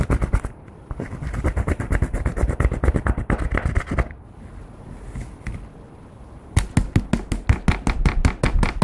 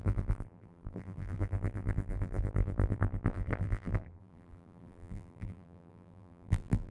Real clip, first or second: first